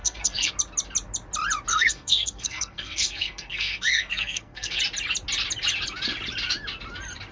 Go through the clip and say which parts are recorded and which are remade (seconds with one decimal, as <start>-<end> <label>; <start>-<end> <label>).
0.0-0.5 remade; 0.5-1.7 recorded; 1.7-4.8 remade; 4.8-7.3 recorded